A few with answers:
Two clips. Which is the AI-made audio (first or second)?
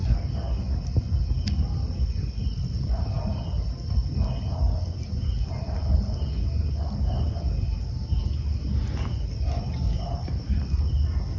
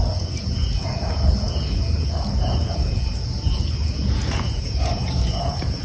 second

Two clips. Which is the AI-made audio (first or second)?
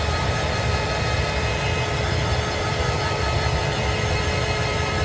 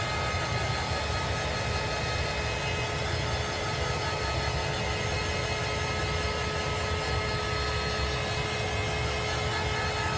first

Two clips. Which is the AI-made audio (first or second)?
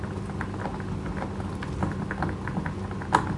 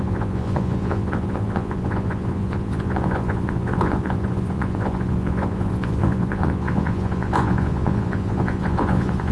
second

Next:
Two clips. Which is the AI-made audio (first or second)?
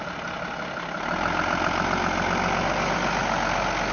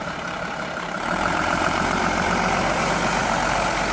second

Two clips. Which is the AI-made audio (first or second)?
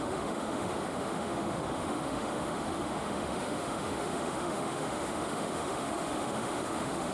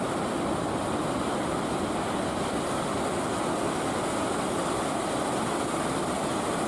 first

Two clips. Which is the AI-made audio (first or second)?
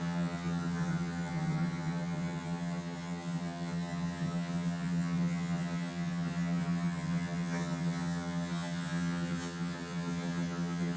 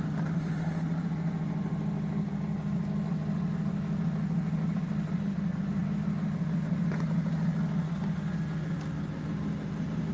first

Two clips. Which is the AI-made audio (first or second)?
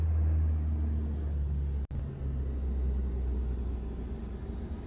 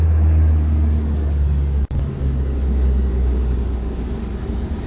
second